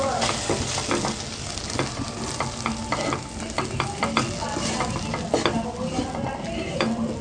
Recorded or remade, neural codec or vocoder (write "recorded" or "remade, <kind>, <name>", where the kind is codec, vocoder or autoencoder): recorded